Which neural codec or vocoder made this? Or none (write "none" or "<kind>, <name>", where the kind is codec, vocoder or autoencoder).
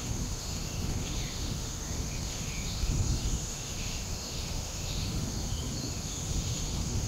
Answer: autoencoder, DAC-VAE